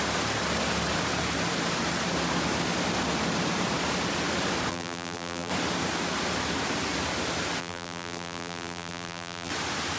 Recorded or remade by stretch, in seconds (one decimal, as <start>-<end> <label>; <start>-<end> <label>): 0.0-4.7 recorded; 4.7-5.5 remade; 5.5-7.6 recorded; 7.6-9.5 remade; 9.5-10.0 recorded